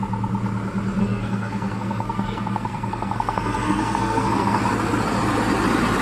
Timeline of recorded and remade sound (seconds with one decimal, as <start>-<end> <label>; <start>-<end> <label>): 0.0-1.0 recorded; 1.0-4.6 remade; 4.6-6.0 recorded